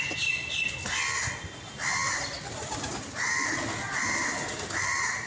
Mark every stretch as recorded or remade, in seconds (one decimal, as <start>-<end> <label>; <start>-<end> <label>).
0.0-5.3 recorded